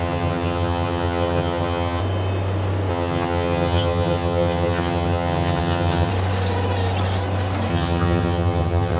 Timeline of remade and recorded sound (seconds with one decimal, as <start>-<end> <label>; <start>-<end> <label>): 0.0-2.0 remade; 2.0-2.9 recorded; 2.9-6.1 remade; 6.1-7.7 recorded; 7.7-9.0 remade